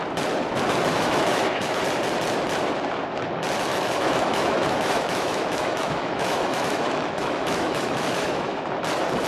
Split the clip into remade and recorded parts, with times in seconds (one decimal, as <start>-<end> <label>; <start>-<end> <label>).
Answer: 0.0-0.9 recorded; 0.9-1.8 remade; 1.8-3.7 recorded; 3.7-8.6 remade; 8.6-9.3 recorded